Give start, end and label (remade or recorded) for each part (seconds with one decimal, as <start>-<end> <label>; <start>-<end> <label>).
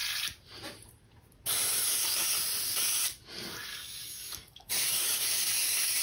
0.0-3.7 recorded; 3.7-6.0 remade